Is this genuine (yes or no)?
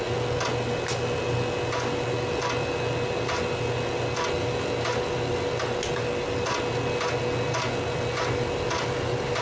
yes